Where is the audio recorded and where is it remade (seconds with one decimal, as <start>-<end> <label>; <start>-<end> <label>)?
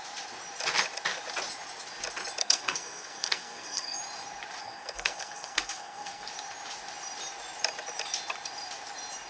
0.0-2.4 recorded; 2.4-4.0 remade; 4.0-4.6 recorded; 4.6-6.3 remade; 6.3-9.3 recorded